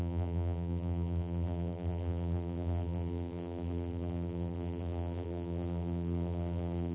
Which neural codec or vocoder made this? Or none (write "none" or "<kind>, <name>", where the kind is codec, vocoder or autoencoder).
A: vocoder, BigVGAN v2